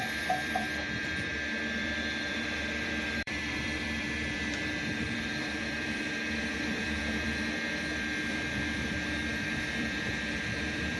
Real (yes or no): no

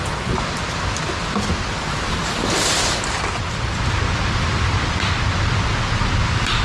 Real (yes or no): yes